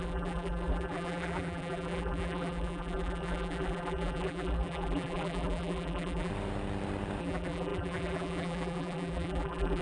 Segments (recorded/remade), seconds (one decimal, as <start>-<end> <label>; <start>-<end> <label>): 0.0-6.3 remade; 6.3-7.2 recorded; 7.2-9.8 remade